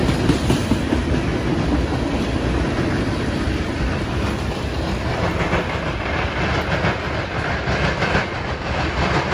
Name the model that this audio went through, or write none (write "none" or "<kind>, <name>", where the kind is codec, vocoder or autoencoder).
vocoder, BigVGAN v2